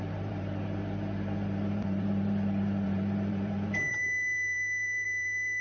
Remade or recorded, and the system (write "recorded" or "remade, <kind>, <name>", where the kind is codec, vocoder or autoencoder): remade, vocoder, BigVGAN v2